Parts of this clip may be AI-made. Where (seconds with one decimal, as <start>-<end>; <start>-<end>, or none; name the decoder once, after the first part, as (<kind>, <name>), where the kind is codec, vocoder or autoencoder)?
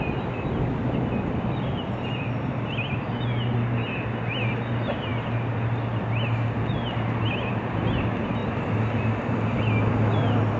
8.4-9.6 (vocoder, BigVGAN v2)